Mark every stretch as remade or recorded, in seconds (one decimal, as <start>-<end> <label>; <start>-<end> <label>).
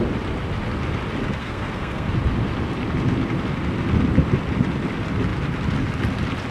0.0-1.4 recorded; 1.4-2.1 remade; 2.1-6.5 recorded